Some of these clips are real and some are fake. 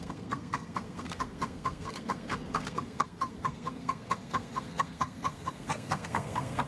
fake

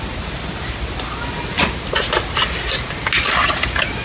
real